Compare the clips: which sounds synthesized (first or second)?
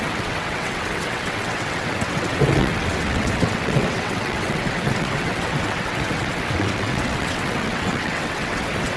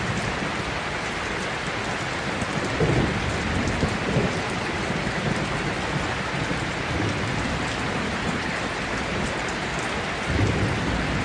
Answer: first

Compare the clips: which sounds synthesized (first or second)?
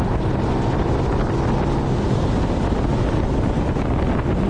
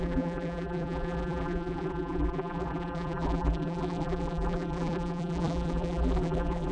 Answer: second